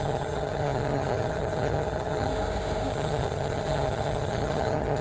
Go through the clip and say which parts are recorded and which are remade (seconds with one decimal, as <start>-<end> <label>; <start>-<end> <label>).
0.0-2.3 remade; 2.3-2.9 recorded; 2.9-5.0 remade